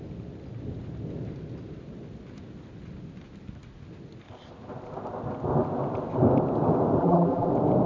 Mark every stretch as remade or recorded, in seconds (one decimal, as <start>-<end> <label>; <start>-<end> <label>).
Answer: 0.0-7.0 recorded; 7.0-7.5 remade; 7.5-7.9 recorded